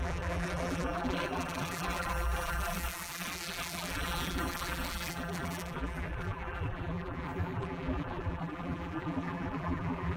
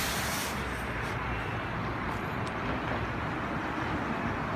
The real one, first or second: second